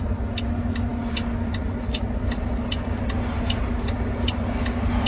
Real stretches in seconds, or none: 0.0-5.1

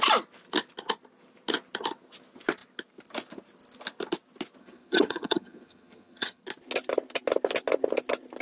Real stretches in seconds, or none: 0.0-4.6; 6.4-8.4

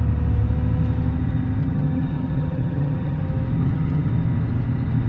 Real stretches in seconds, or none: 0.0-1.6; 3.2-3.6; 4.1-5.1

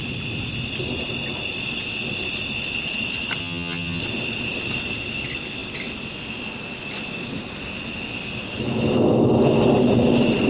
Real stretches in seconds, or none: 0.0-3.4; 4.0-10.5

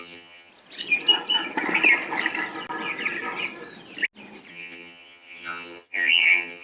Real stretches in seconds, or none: 0.5-4.5